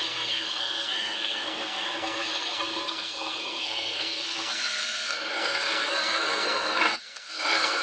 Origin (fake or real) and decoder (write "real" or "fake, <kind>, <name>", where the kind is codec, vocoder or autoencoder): fake, codec, SNAC